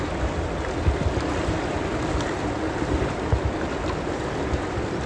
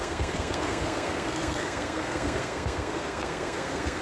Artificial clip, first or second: second